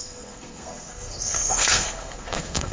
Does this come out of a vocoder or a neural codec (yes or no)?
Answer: yes